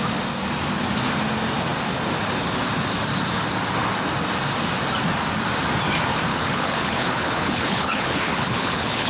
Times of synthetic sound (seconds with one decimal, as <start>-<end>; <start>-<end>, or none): 6.3-9.1